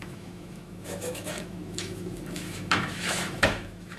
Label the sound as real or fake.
fake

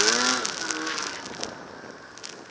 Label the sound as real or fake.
real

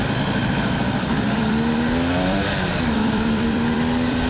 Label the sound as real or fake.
fake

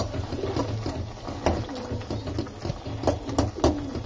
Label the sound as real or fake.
real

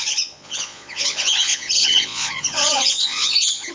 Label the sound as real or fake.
fake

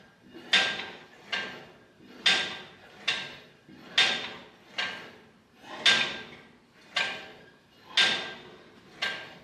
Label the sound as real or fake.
real